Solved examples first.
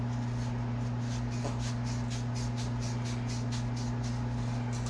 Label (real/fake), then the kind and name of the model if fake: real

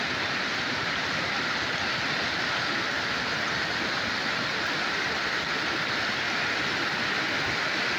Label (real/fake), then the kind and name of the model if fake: real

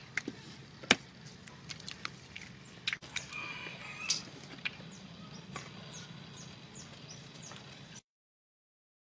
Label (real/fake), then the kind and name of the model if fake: real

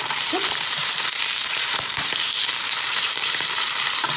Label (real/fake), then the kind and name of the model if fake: fake, vocoder, BigVGAN v2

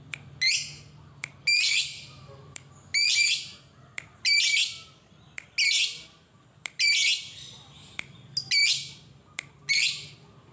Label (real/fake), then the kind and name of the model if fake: real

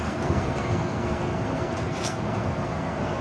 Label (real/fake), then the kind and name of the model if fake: fake, codec, SNAC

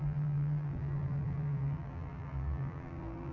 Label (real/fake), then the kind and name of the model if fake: fake, vocoder, BigVGAN v2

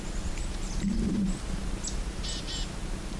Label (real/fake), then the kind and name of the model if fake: real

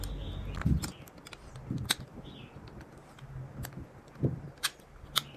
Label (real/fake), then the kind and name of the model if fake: real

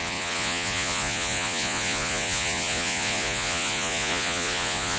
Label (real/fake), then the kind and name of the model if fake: fake, vocoder, Vocos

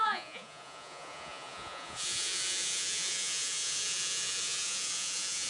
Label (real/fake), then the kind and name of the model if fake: fake, vocoder, Vocos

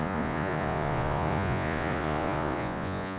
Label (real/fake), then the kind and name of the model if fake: fake, vocoder, Vocos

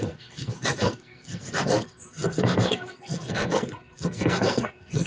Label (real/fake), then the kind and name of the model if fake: fake, codec, SNAC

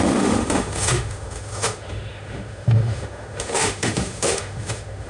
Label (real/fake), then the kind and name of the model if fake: fake, autoencoder, DAC-VAE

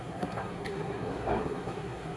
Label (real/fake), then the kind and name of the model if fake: fake, codec, SNAC